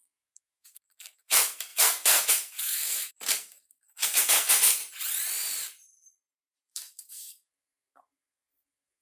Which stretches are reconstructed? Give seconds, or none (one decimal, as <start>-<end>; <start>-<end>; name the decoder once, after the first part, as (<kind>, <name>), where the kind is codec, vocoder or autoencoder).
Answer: 0.0-4.8 (codec, SNAC); 6.7-9.0